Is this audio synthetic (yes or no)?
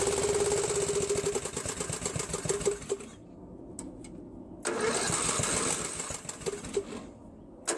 no